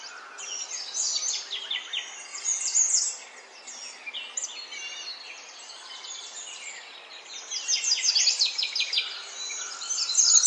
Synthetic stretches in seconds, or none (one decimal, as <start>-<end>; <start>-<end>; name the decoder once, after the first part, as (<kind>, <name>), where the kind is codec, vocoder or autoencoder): 2.3-3.0 (vocoder, Vocos)